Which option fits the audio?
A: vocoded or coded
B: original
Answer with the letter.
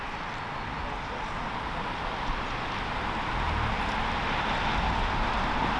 B